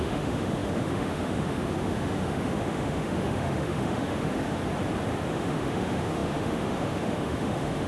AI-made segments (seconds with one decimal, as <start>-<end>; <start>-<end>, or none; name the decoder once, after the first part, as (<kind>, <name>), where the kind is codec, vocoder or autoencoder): 0.0-4.6 (autoencoder, DAC-VAE); 5.3-7.9